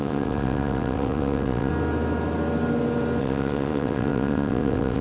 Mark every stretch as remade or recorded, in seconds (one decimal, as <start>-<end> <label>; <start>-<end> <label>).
0.0-1.7 remade; 1.7-3.2 recorded; 3.2-5.0 remade

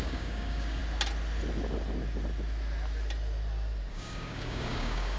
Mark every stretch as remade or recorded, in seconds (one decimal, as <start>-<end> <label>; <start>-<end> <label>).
0.0-0.8 remade; 0.8-3.9 recorded; 3.9-5.2 remade